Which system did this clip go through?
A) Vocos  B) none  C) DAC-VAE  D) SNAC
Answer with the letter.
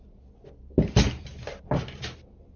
B